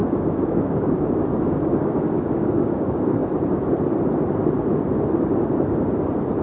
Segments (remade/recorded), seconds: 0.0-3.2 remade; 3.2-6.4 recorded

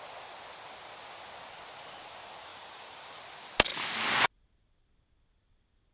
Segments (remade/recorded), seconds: 0.0-2.5 recorded; 2.5-3.2 remade; 3.2-5.9 recorded

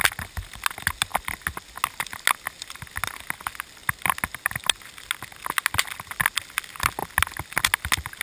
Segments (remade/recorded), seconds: 0.0-8.2 recorded